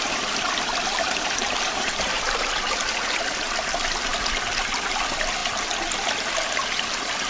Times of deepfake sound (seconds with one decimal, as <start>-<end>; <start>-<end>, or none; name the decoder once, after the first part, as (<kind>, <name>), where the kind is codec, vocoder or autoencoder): 1.4-2.5 (vocoder, BigVGAN v2)